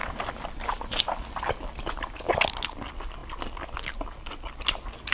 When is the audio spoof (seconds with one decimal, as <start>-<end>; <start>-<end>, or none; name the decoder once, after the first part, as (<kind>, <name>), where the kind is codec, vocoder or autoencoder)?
none